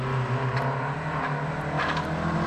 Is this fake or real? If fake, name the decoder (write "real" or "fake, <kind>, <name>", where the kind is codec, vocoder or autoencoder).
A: real